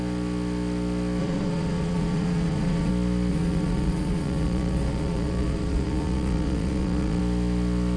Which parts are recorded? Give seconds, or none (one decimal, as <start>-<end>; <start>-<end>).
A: 0.0-1.2; 2.9-3.3; 7.2-8.0